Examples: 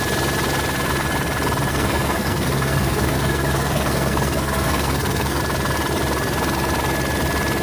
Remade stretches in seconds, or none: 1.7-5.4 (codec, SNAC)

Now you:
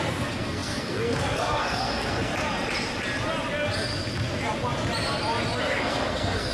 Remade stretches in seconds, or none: 0.0-2.3 (codec, SNAC); 5.6-6.5

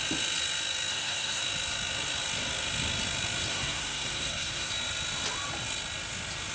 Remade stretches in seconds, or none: 0.9-1.4 (codec, SNAC); 3.5-4.7

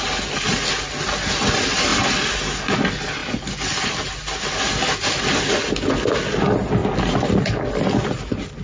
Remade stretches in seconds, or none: none

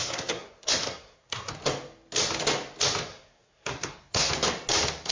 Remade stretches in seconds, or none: 0.0-1.5 (codec, SNAC); 3.1-4.3

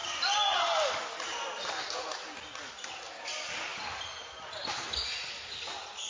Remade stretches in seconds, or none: none

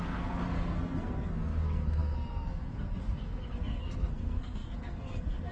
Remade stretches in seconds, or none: 0.0-5.5 (codec, SNAC)

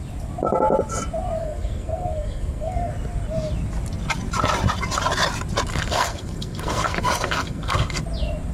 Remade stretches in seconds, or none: 1.4-2.9 (codec, SNAC); 5.7-8.0